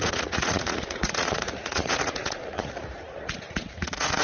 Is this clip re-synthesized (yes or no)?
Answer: yes